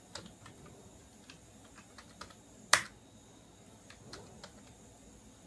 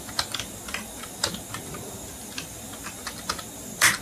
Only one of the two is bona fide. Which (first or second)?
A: first